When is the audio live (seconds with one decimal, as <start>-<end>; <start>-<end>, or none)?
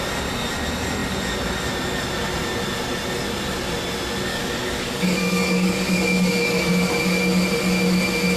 0.0-4.3; 6.7-8.4